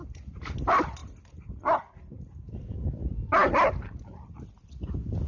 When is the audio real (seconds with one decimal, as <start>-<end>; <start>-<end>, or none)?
0.0-5.3